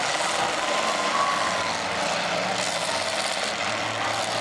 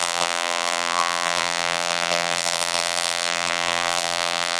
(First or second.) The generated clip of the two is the second